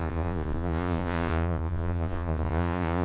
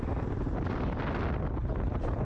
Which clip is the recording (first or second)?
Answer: second